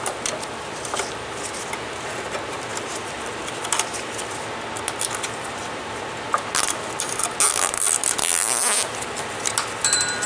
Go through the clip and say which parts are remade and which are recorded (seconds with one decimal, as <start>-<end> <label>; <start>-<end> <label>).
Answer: 0.0-10.3 recorded